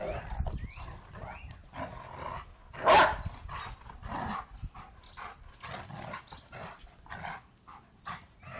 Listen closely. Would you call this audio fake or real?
real